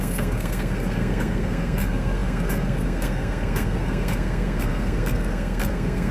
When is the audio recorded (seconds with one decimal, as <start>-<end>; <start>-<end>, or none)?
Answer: none